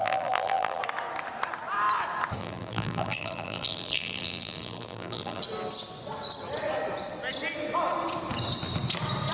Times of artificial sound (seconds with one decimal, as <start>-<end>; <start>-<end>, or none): 0.0-0.8; 2.4-5.4

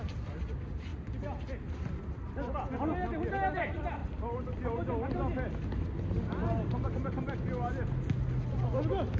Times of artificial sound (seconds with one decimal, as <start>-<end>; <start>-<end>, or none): 4.0-4.8; 6.4-7.3